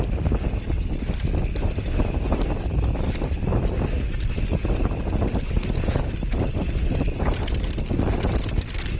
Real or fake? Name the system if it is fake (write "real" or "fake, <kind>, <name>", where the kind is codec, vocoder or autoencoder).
real